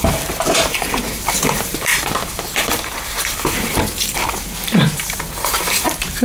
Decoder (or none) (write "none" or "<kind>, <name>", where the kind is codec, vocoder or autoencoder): vocoder, BigVGAN v2